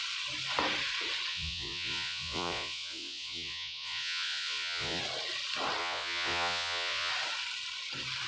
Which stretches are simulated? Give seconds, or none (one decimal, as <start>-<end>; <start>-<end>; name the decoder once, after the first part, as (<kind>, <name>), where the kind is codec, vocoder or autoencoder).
1.3-5.0 (vocoder, Vocos); 5.8-7.1